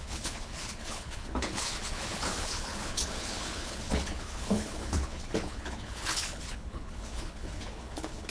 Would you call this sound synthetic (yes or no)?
yes